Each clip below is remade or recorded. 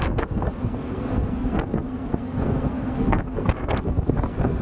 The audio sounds remade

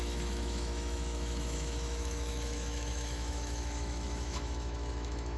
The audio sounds remade